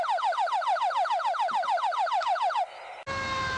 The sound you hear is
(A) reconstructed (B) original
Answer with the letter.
B